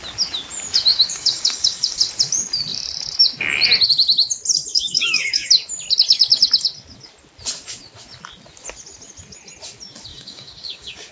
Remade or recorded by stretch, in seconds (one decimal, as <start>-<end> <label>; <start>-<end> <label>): 0.0-0.9 recorded; 0.9-2.0 remade; 2.0-4.7 recorded; 4.7-5.5 remade; 5.5-10.1 recorded; 10.1-11.1 remade

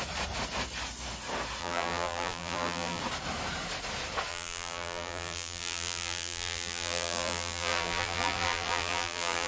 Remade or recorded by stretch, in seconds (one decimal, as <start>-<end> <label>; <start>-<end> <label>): 0.0-1.6 recorded; 1.6-3.0 remade; 3.0-4.3 recorded; 4.3-9.5 remade

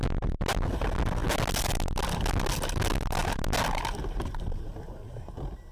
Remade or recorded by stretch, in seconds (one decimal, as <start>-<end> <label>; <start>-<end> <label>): 0.0-5.7 recorded

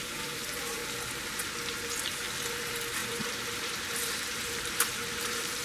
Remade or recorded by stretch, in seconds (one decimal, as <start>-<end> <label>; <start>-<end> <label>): 0.0-0.8 remade; 0.8-2.5 recorded; 2.5-5.6 remade

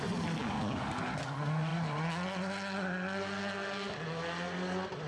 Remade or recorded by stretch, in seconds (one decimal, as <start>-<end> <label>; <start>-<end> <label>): 0.0-0.4 recorded; 0.4-1.1 remade; 1.1-5.1 recorded

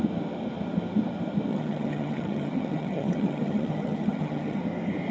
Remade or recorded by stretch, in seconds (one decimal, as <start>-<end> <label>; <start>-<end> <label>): 0.0-1.5 recorded; 1.5-4.6 remade; 4.6-5.1 recorded

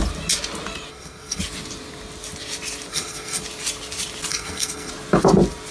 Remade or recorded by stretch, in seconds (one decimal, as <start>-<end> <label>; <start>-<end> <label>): 0.0-0.9 recorded; 0.9-1.4 remade; 1.4-2.9 recorded; 2.9-3.4 remade; 3.4-4.3 recorded; 4.3-4.9 remade; 4.9-5.7 recorded

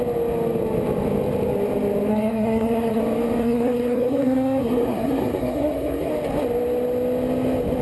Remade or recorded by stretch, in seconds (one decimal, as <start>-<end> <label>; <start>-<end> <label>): 0.0-2.1 recorded; 2.1-3.0 remade; 3.0-3.4 recorded; 3.4-6.1 remade; 6.1-7.8 recorded